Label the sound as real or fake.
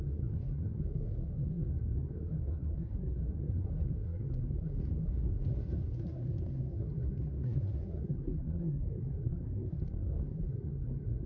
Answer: fake